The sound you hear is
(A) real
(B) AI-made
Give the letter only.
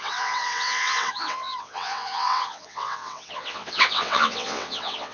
B